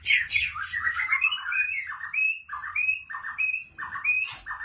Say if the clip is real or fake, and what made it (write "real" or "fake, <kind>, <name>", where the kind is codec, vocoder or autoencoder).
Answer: real